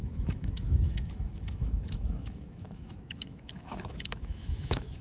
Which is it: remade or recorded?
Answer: remade